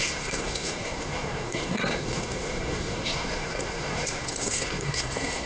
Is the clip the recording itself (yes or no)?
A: no